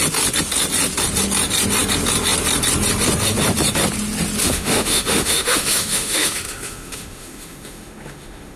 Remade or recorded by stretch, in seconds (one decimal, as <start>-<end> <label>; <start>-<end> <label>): 0.0-4.4 recorded; 4.4-8.6 remade